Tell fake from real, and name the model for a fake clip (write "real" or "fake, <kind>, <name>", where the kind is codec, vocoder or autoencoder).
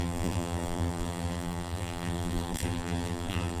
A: fake, vocoder, BigVGAN v2